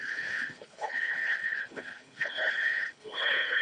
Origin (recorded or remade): remade